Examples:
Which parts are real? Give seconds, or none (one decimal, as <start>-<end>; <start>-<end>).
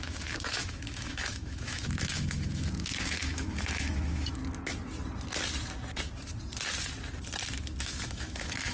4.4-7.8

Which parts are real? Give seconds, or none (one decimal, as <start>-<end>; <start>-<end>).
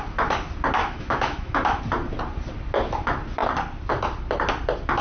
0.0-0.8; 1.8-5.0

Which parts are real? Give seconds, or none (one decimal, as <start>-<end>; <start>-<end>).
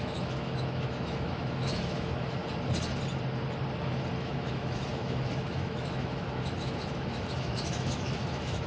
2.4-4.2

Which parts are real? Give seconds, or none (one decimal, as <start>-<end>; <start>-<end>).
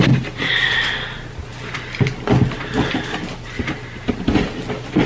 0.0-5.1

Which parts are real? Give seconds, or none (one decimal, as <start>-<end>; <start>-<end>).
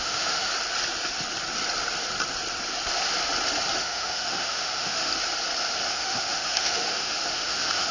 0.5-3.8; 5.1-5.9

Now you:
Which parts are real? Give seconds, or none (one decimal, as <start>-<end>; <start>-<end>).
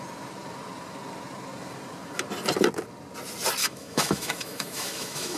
0.0-3.6